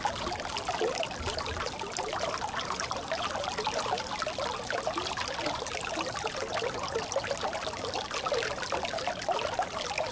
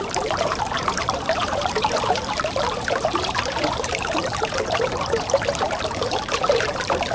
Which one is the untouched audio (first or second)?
first